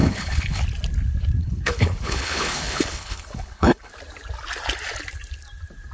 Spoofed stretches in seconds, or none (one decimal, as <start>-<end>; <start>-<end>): 0.0-0.6; 1.4-3.9

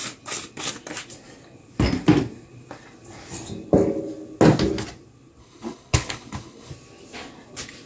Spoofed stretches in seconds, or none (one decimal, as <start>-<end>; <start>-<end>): 5.4-6.7

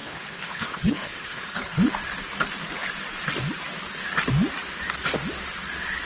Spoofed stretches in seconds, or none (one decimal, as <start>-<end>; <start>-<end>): 0.0-1.9

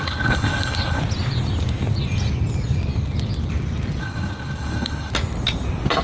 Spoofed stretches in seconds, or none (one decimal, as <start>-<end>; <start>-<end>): 0.0-1.0; 4.0-5.1

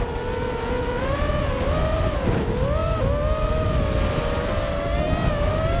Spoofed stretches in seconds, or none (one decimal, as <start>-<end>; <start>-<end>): none

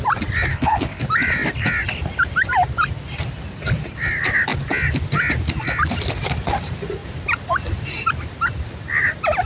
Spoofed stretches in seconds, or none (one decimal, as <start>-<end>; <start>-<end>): 0.5-1.0

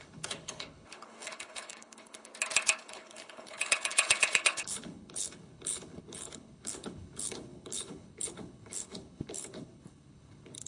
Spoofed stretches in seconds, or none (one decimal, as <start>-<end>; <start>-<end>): 0.0-2.3; 2.8-10.7

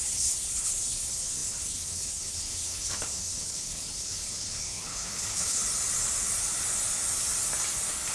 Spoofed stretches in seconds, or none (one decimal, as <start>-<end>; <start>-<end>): 0.0-5.6